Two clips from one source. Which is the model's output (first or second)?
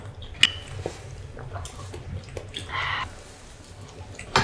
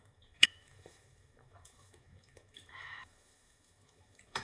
second